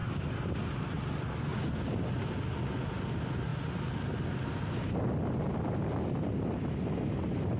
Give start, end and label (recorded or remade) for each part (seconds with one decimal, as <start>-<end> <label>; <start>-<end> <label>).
0.0-7.6 recorded

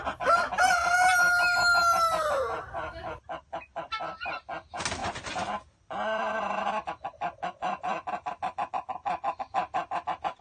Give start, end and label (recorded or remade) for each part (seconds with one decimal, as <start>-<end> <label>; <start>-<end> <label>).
0.0-10.4 recorded